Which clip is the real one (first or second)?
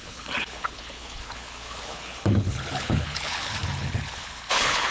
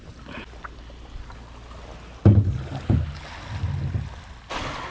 second